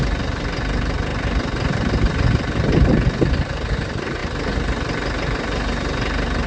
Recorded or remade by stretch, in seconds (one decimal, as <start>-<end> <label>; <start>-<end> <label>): 0.0-6.5 recorded